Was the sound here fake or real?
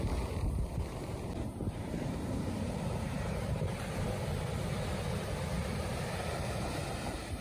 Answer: fake